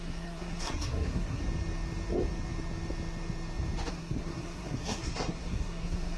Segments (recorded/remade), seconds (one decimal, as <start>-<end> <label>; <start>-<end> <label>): 0.0-1.4 remade; 1.4-3.9 recorded; 3.9-6.2 remade